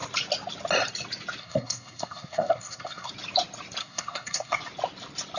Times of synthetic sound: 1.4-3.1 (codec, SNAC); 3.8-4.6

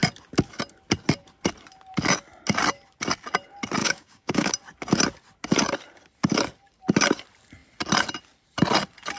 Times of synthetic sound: 3.8-4.5 (codec, DAC)

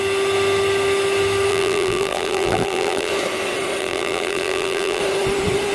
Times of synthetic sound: 1.5-3.1 (vocoder, BigVGAN v2); 3.8-5.0

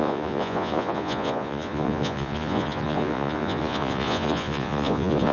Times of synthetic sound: 0.0-5.3 (vocoder, Vocos)

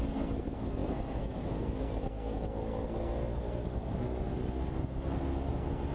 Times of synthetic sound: 0.0-5.9 (codec, SNAC)

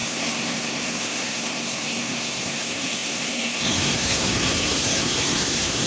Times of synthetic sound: 0.0-5.9 (codec, SNAC)